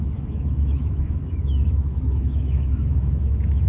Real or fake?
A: fake